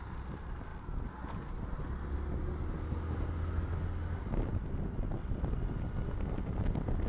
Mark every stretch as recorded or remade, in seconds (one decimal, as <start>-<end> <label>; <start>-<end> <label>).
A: 0.0-7.1 recorded